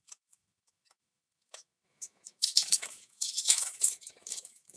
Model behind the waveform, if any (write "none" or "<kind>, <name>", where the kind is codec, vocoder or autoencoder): autoencoder, DAC-VAE